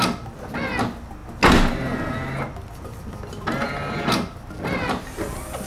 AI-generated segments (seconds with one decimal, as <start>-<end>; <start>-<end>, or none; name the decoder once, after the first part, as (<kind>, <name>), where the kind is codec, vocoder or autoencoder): none